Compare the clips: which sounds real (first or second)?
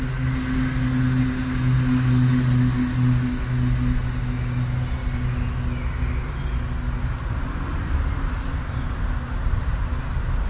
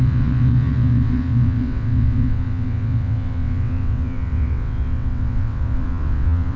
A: first